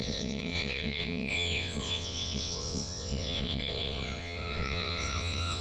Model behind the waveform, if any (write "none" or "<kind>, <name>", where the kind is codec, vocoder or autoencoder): vocoder, WaveNeXt